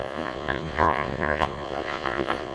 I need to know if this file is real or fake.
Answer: fake